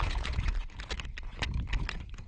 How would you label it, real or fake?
fake